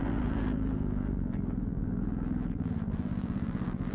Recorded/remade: remade